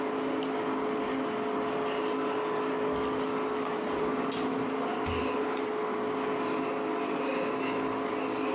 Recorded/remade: recorded